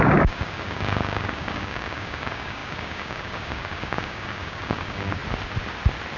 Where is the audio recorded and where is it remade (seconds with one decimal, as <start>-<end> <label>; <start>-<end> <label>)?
0.0-5.2 remade; 5.2-6.2 recorded